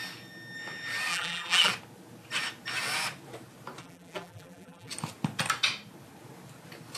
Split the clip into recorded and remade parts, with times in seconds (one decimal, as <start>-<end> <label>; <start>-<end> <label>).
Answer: 0.0-1.1 recorded; 1.1-1.7 remade; 1.7-3.8 recorded; 3.8-4.9 remade; 4.9-7.0 recorded